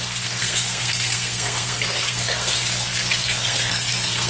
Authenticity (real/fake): fake